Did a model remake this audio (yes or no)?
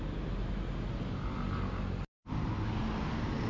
no